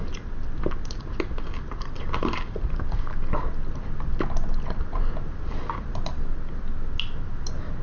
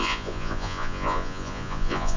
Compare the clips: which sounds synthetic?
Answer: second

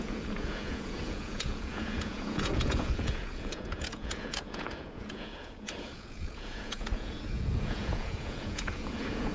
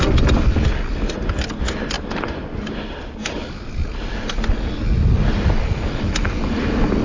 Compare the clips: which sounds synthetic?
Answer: first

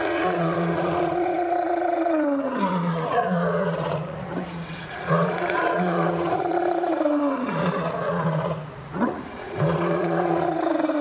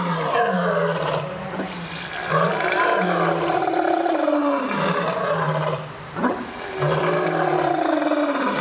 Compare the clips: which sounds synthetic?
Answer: first